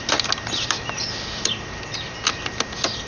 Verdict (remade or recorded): recorded